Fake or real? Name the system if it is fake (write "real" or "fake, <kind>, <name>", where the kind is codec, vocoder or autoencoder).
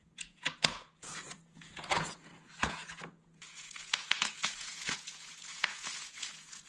fake, vocoder, Vocos